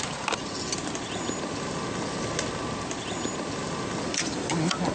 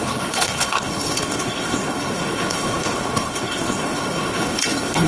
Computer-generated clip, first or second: second